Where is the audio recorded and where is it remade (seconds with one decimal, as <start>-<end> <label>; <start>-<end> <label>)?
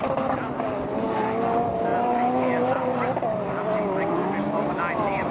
0.0-5.3 recorded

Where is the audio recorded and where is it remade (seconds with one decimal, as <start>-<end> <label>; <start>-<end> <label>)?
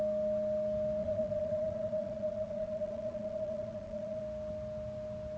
0.0-1.0 recorded; 1.0-4.2 remade; 4.2-5.4 recorded